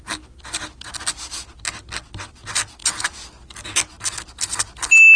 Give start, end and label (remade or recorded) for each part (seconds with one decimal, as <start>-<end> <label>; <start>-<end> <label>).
0.0-5.2 recorded

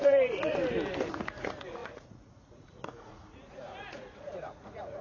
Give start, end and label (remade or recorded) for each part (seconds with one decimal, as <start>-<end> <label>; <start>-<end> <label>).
0.0-0.5 remade; 0.5-1.1 recorded; 1.1-5.0 remade

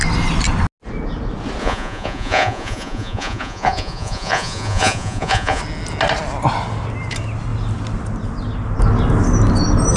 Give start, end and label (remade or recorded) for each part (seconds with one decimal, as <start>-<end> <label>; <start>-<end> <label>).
0.0-1.6 recorded; 1.6-5.6 remade; 5.6-10.0 recorded